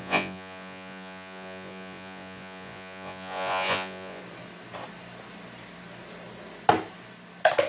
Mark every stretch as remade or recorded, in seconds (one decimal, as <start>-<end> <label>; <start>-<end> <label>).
0.0-4.2 remade; 4.2-7.7 recorded